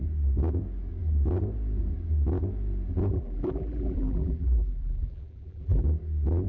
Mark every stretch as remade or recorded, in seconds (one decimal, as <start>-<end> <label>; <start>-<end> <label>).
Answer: 0.0-3.1 recorded; 3.1-5.8 remade; 5.8-6.5 recorded